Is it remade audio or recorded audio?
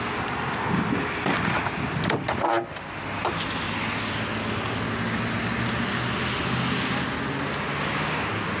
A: recorded